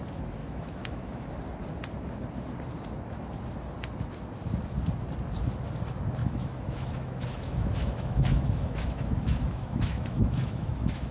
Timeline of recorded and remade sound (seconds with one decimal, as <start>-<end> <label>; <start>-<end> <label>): 0.0-0.4 recorded; 0.4-1.3 remade; 1.3-6.2 recorded; 6.2-11.1 remade